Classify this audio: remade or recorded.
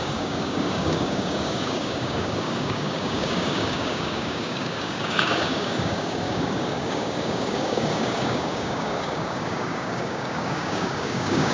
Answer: remade